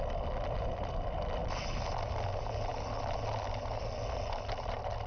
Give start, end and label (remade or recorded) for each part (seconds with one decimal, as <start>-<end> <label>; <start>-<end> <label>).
0.0-5.1 recorded